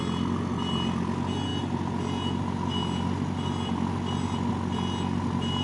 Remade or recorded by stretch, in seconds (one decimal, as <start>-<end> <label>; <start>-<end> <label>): 0.0-5.6 recorded